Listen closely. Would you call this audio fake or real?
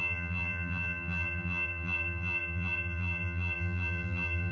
fake